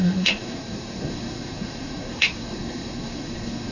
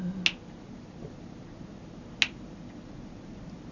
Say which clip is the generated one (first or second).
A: first